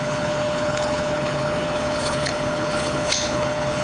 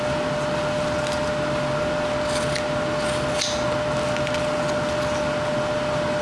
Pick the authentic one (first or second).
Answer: second